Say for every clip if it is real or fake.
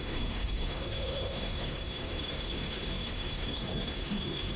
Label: fake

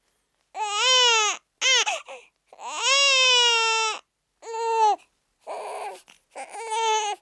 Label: real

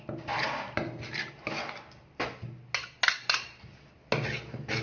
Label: real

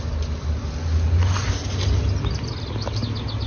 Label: real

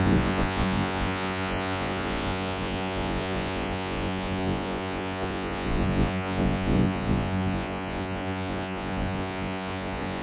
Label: fake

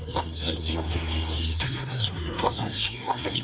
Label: fake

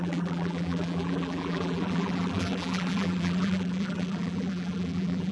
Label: fake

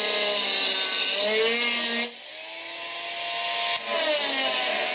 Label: real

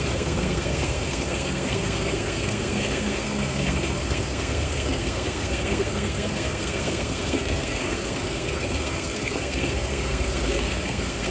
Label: fake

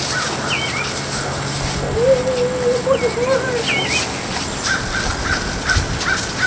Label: real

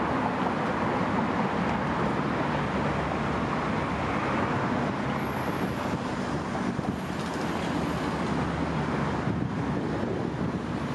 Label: real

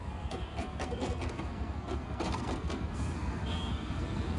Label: fake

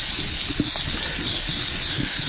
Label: real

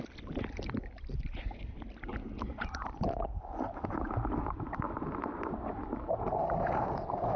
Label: real